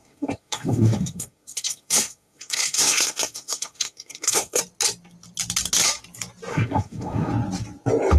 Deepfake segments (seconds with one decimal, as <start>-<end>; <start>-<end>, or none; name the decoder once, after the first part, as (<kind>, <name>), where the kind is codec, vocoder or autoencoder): 0.0-4.6 (codec, SNAC); 6.5-7.3